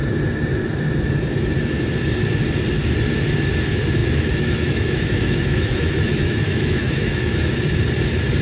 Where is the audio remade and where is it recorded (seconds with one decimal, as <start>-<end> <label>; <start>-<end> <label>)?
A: 0.0-4.0 recorded; 4.0-7.5 remade; 7.5-8.4 recorded